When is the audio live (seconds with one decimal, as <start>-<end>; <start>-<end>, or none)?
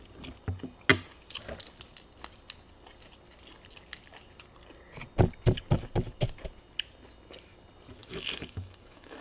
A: 0.0-8.0